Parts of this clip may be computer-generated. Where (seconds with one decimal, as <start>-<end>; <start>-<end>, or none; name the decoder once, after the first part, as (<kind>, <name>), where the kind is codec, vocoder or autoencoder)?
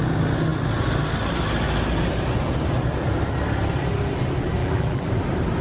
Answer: 4.6-5.1 (vocoder, BigVGAN v2)